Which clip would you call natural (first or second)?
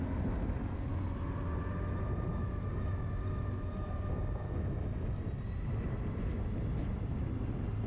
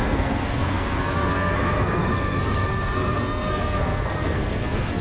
first